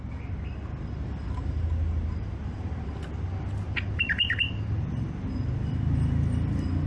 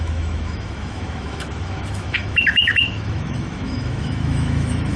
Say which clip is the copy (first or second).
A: second